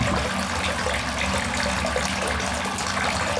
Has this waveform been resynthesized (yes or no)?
no